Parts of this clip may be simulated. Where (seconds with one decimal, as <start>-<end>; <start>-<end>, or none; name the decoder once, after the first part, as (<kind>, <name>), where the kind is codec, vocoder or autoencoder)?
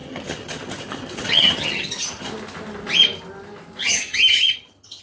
0.0-2.3 (vocoder, HiFi-GAN); 3.8-5.0